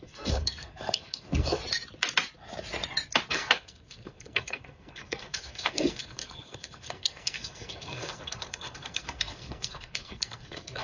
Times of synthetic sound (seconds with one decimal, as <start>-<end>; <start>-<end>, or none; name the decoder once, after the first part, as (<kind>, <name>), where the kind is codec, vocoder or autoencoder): 0.0-1.6 (codec, SNAC); 3.3-10.8